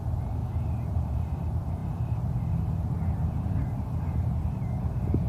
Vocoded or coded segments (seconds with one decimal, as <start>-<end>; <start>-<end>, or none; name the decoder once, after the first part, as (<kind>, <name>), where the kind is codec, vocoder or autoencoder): 0.0-0.4 (vocoder, BigVGAN v2); 0.9-5.3